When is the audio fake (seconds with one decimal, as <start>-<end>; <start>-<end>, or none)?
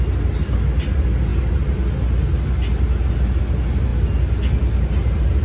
none